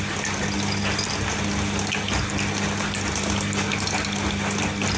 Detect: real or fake real